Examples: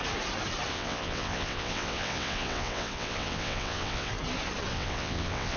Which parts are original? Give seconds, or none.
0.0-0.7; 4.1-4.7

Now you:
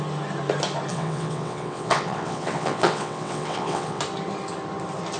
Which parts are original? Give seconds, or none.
0.0-0.9; 4.0-5.2

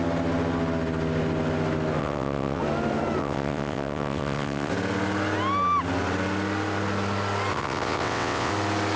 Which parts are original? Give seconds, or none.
0.0-2.0; 2.6-3.2; 4.7-7.5; 8.5-9.0

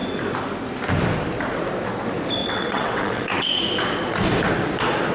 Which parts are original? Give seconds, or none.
0.0-2.4; 3.6-5.1

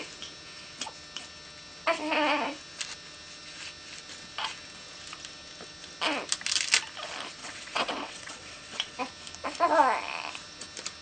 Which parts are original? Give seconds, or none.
0.0-7.4; 9.0-11.0

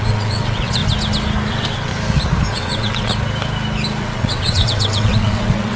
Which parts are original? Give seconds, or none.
0.8-1.5; 1.9-2.5; 3.1-4.0